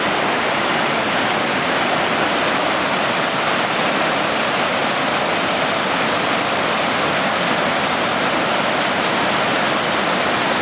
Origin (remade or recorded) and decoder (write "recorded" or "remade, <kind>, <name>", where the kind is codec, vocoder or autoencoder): remade, vocoder, BigVGAN v2